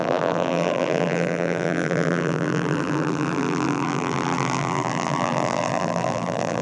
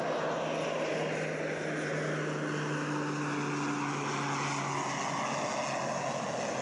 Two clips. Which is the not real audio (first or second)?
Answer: first